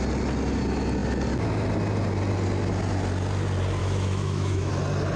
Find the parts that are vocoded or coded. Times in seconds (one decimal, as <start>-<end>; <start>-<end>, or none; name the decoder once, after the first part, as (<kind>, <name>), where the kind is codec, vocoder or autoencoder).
3.8-4.7 (autoencoder, DAC-VAE)